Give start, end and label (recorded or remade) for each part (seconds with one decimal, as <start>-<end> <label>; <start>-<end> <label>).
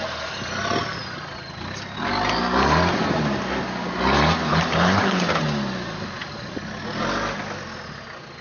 0.0-4.5 recorded; 4.5-5.4 remade; 5.4-8.4 recorded